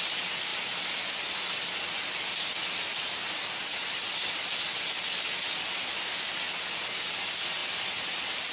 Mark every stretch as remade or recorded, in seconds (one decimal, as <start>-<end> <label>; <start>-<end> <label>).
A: 0.0-8.5 recorded